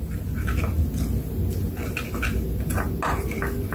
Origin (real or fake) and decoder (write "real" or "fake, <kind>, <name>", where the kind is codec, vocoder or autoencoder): real